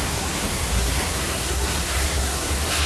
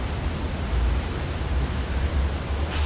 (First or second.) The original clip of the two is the second